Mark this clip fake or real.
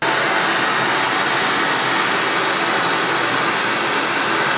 real